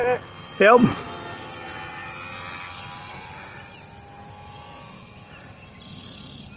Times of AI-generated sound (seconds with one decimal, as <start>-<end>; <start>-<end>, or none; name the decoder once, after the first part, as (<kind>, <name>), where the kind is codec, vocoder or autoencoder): none